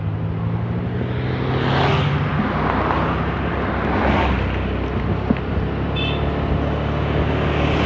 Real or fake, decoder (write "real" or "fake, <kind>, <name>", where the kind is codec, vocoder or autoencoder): real